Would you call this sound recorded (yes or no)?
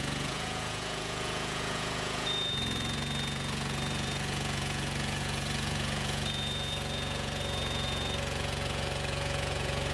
no